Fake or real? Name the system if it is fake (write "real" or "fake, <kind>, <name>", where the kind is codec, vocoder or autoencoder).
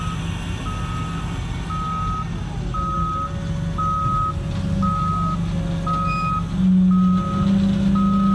real